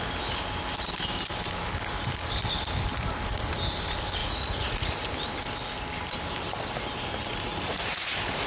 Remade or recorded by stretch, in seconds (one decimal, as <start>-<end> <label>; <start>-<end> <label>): 0.0-4.2 recorded; 4.2-4.9 remade; 4.9-7.5 recorded; 7.5-8.5 remade